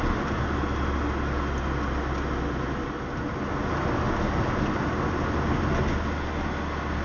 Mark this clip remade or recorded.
recorded